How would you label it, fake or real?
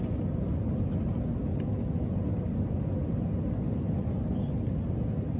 real